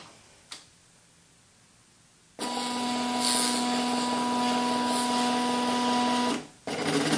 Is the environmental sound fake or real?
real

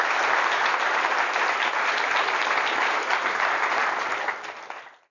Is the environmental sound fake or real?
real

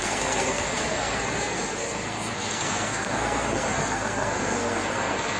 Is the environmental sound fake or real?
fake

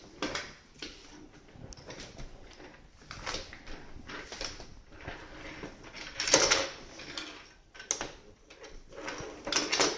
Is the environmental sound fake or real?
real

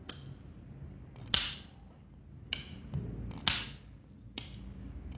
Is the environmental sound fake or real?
real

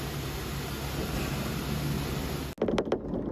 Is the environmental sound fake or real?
real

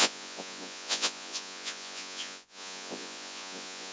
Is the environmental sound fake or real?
fake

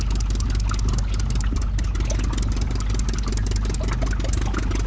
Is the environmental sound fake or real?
real